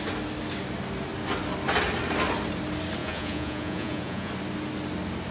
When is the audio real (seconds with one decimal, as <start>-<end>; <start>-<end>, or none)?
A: 0.0-3.0; 4.3-5.3